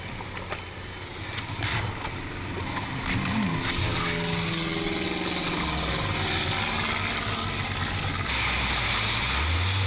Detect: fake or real real